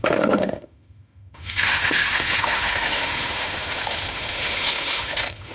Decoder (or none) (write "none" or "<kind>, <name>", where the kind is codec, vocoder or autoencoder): autoencoder, DAC-VAE